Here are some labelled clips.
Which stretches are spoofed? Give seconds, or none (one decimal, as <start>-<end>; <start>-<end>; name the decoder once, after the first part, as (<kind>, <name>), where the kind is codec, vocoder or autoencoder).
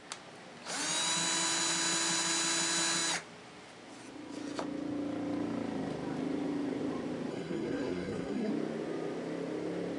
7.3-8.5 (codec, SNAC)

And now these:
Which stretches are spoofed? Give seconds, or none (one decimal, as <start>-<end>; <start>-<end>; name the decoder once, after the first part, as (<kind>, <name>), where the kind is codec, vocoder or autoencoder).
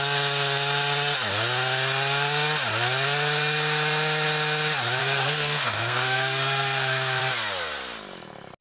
5.0-7.2 (codec, SNAC)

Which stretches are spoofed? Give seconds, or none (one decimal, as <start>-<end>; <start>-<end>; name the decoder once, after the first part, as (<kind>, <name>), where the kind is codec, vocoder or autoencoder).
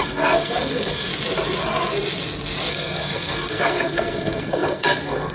0.0-1.1 (codec, SNAC); 2.7-5.3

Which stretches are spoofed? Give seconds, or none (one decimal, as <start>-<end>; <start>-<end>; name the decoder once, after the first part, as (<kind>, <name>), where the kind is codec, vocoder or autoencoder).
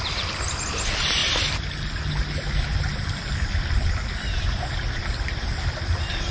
none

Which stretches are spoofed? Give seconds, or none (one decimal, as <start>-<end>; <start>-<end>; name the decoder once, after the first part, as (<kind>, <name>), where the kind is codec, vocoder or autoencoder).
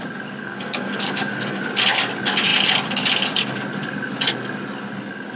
0.4-1.6 (codec, SNAC)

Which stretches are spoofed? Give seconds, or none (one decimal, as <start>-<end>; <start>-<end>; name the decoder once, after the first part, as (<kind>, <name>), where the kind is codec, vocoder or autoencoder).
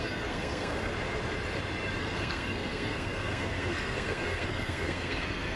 0.0-0.9 (codec, SNAC); 2.0-5.6